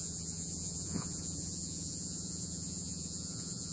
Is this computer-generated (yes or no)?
yes